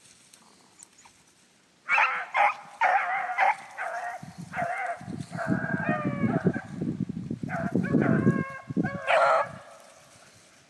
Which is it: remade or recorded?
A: recorded